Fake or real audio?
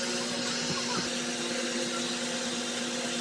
real